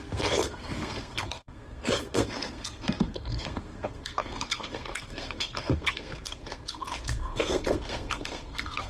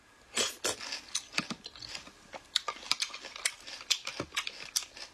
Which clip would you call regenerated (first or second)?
first